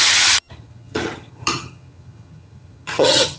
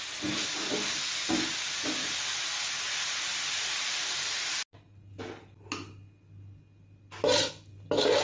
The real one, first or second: second